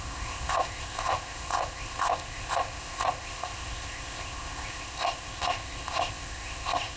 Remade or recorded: remade